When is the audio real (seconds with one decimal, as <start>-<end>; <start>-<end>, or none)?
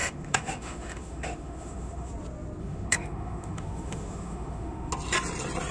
2.1-2.6; 4.9-5.7